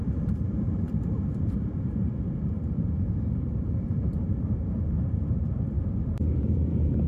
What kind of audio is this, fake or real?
fake